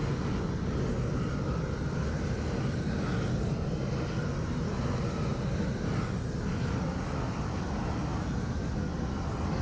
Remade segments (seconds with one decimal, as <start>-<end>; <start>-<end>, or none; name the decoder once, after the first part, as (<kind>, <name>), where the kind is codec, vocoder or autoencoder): 5.3-5.9 (vocoder, BigVGAN v2)